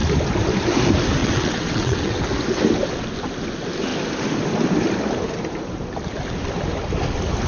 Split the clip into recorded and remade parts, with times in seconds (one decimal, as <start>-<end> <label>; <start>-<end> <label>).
0.0-1.2 recorded; 1.2-2.2 remade; 2.2-7.5 recorded